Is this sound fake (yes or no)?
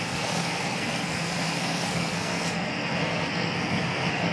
yes